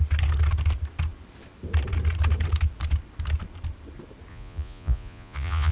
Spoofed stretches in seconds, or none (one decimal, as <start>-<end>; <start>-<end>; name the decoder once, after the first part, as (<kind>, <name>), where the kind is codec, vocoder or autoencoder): 4.3-5.7 (vocoder, Vocos)